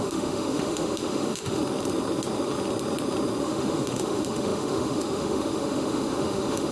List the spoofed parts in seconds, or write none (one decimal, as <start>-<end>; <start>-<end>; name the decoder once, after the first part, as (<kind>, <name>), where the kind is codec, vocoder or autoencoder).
0.0-1.6 (autoencoder, DAC-VAE); 3.4-6.7